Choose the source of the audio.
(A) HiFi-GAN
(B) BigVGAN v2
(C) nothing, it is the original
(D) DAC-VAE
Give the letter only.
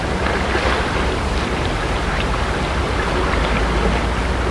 C